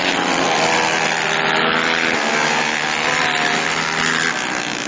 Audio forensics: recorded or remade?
recorded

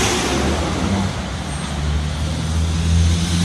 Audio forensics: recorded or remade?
recorded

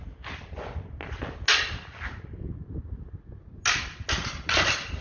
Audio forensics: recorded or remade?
recorded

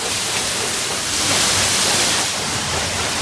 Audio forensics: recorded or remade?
remade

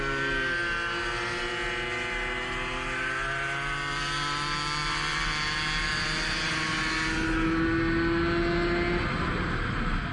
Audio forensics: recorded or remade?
recorded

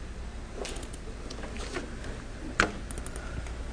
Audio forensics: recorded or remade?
recorded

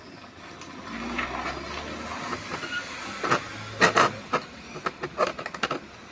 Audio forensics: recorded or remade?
recorded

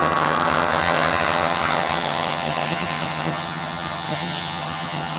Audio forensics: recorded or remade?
remade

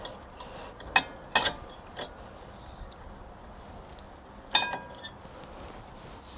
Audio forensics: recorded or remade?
recorded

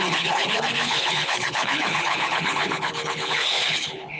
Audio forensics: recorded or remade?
remade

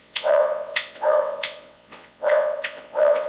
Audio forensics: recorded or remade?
remade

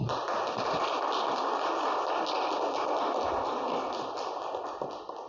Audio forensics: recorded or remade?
recorded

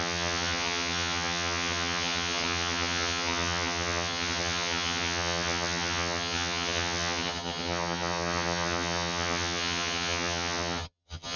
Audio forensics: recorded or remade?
remade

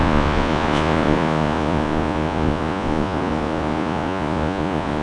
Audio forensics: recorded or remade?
remade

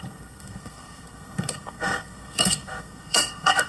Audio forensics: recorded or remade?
remade